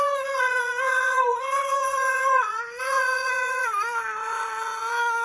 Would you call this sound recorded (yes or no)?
no